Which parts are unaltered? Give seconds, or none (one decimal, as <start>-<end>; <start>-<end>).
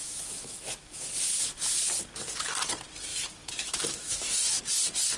1.0-3.1; 4.6-5.2